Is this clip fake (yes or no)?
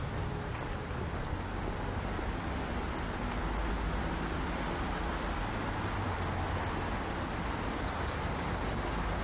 no